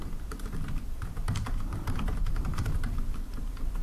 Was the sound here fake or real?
fake